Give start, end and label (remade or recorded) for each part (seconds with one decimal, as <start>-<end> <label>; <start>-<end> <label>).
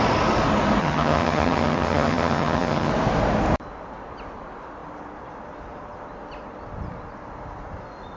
0.0-0.8 recorded; 0.8-2.9 remade; 2.9-8.2 recorded